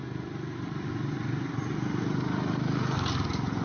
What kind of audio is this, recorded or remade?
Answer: recorded